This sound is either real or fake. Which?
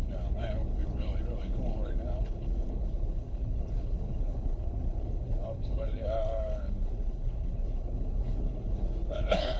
fake